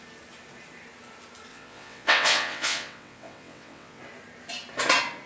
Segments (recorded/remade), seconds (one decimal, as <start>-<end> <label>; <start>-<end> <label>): 0.0-1.5 recorded; 1.5-4.0 remade; 4.0-5.3 recorded